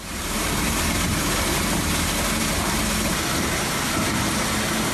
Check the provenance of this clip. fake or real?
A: fake